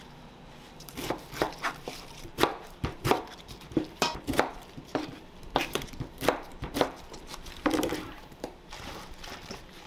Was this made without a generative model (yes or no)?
no